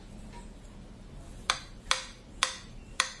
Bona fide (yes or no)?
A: yes